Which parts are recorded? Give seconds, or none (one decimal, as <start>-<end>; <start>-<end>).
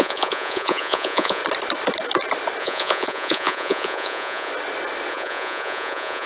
1.4-2.6; 4.5-5.1